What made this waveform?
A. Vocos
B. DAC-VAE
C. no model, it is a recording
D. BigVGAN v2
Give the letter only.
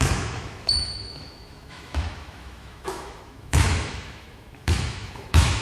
B